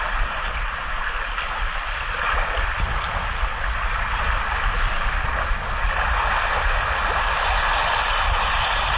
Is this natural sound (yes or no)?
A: yes